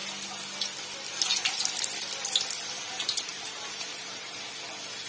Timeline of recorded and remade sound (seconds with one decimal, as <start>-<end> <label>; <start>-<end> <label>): 0.0-3.3 recorded; 3.3-4.4 remade; 4.4-5.1 recorded